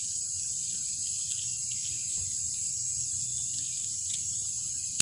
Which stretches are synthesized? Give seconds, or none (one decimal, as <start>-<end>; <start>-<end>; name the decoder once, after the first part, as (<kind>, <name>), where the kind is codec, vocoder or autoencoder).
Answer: none